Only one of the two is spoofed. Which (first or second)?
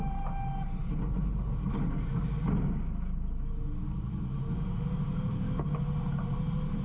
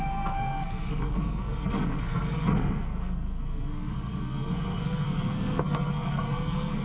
second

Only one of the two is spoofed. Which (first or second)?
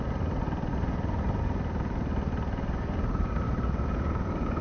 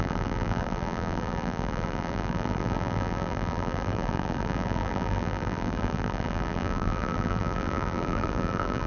second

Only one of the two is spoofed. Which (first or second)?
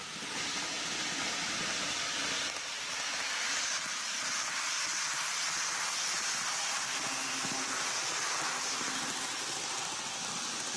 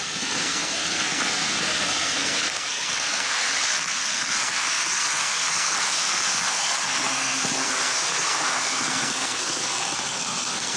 second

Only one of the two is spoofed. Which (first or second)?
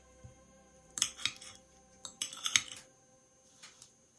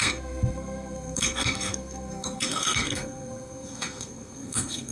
second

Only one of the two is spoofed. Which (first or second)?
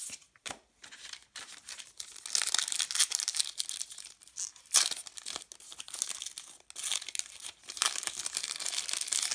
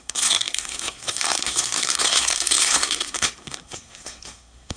second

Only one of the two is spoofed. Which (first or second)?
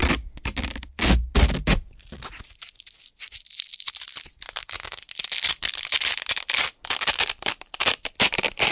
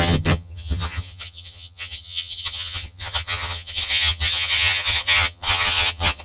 second